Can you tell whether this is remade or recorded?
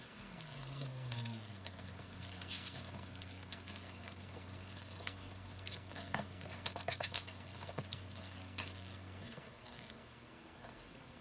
remade